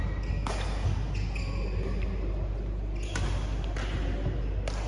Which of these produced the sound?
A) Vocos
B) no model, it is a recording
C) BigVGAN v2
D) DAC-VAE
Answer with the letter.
B